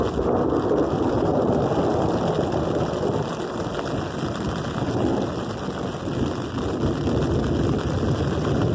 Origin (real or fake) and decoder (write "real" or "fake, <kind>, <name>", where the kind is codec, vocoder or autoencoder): real